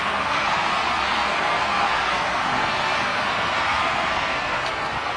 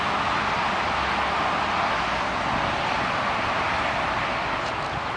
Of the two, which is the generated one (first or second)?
first